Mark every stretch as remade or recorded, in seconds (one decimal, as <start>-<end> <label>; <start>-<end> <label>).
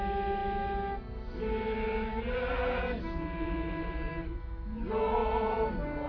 0.0-6.1 recorded